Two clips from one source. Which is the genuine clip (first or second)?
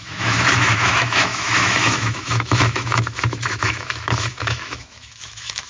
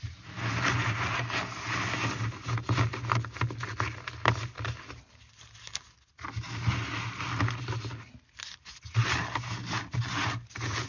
second